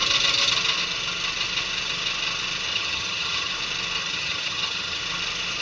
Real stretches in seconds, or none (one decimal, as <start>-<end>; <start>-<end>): 0.0-2.7; 3.5-4.0; 5.0-5.6